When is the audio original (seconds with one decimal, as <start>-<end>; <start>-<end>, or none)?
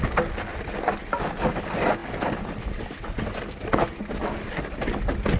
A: 0.0-5.4